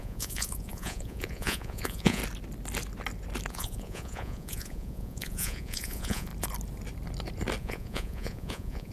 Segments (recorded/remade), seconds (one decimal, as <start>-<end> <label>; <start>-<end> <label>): 0.0-2.2 remade; 2.2-3.5 recorded; 3.5-6.3 remade; 6.3-7.6 recorded; 7.6-8.9 remade